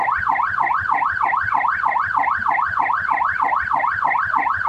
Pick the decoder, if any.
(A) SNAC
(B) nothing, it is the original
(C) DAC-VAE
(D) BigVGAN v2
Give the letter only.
B